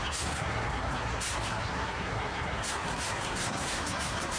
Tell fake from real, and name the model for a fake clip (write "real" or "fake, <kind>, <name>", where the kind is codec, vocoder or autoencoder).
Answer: fake, codec, SNAC